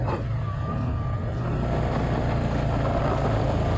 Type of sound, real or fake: real